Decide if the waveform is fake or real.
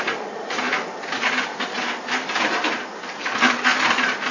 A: real